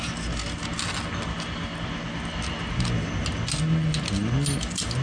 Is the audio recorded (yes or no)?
yes